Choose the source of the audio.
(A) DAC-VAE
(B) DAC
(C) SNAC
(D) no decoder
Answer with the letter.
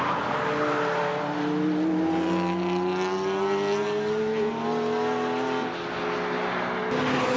D